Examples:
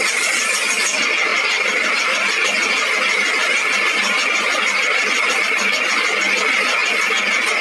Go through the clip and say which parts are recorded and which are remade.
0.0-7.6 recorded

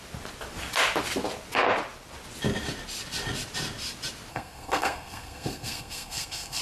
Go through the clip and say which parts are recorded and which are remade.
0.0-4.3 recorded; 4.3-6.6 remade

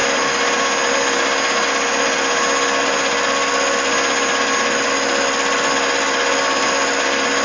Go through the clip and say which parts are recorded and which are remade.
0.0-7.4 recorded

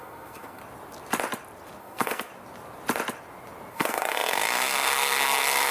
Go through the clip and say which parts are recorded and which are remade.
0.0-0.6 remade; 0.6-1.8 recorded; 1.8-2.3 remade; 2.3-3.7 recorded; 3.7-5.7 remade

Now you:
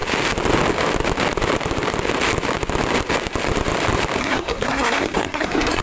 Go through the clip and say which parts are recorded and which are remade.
0.0-4.2 recorded; 4.2-5.8 remade

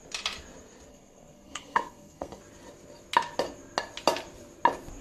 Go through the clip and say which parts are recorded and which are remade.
0.0-0.9 recorded; 0.9-2.4 remade; 2.4-5.0 recorded

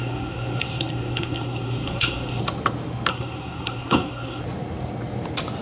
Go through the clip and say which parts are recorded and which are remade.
0.0-2.4 remade; 2.4-3.1 recorded; 3.1-4.4 remade; 4.4-5.6 recorded